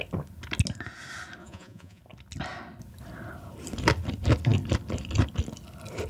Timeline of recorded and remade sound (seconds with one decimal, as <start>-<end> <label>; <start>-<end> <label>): 0.0-1.4 recorded; 1.4-2.0 remade; 2.0-6.1 recorded